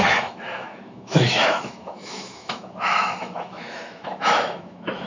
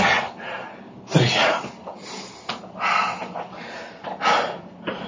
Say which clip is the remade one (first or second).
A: first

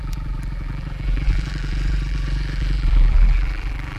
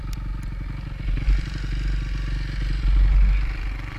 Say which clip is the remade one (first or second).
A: first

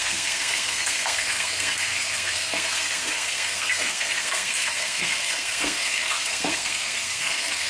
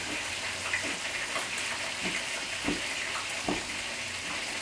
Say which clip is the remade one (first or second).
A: first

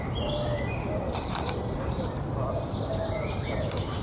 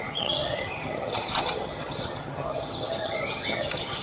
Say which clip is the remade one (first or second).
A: second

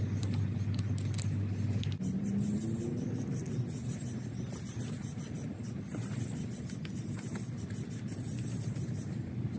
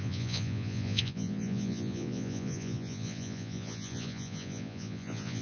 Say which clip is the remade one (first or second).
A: second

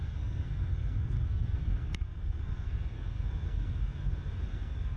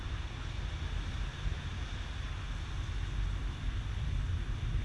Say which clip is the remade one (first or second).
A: first